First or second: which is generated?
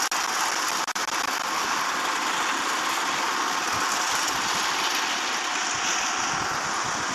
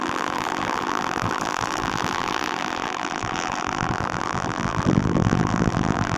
second